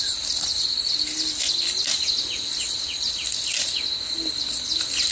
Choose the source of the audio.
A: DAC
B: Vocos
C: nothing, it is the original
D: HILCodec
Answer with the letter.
C